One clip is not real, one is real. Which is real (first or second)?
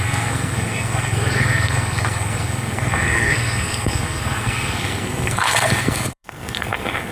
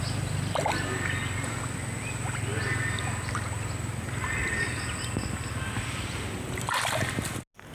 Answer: second